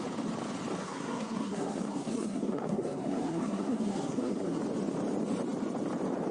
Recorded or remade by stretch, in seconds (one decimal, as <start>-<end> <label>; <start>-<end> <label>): 0.0-0.8 recorded; 0.8-4.6 remade; 4.6-6.3 recorded

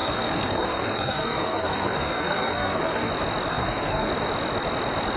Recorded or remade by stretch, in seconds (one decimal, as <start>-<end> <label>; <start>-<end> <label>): 0.0-3.1 remade; 3.1-3.5 recorded; 3.5-4.1 remade; 4.1-5.2 recorded

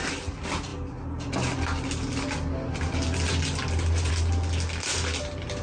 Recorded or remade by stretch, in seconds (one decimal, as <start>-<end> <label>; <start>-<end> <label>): 0.0-5.6 recorded

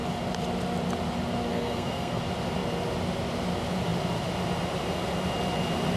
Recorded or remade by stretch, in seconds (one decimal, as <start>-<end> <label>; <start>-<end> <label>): 0.0-1.5 recorded; 1.5-2.2 remade; 2.2-6.0 recorded

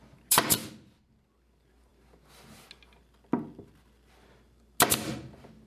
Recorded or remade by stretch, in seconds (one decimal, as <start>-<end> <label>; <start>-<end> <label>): 0.0-5.7 recorded